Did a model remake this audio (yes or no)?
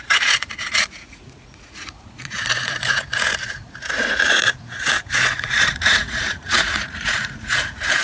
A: yes